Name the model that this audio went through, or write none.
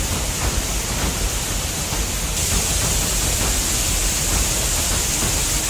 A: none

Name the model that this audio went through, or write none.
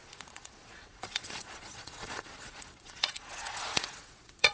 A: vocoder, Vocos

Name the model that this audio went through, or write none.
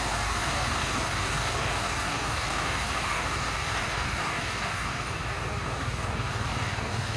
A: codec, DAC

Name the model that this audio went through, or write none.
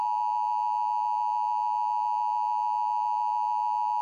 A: none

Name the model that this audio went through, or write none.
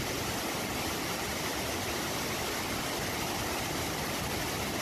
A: none